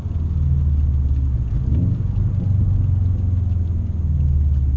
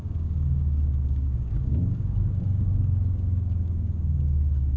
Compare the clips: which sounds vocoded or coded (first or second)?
second